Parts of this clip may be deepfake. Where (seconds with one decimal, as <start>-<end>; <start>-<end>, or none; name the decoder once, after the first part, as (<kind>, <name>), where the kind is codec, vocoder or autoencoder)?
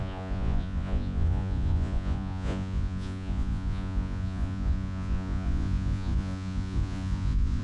0.0-7.6 (vocoder, Vocos)